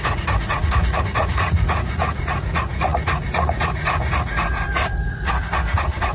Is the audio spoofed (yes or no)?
yes